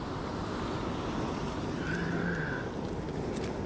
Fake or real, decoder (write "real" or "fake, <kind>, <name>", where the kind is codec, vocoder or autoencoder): real